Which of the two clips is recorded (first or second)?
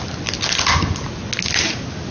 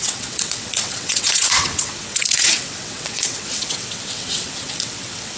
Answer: first